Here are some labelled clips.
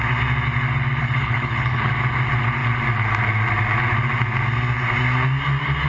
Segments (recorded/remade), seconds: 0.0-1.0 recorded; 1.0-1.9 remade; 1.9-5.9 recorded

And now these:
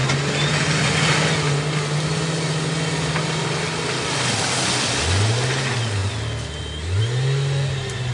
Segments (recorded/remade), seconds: 0.0-8.1 recorded